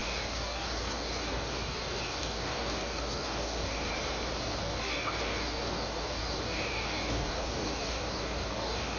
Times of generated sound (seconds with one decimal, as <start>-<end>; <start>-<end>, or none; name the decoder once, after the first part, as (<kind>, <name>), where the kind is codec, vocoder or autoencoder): 0.0-3.9 (codec, DAC); 4.6-9.0